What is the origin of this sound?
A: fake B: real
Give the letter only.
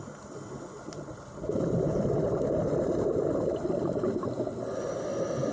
B